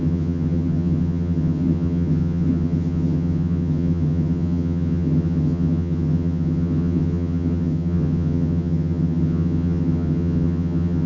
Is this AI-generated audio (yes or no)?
yes